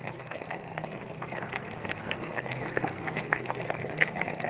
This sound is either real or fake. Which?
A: fake